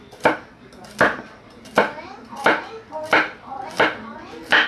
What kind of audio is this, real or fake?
real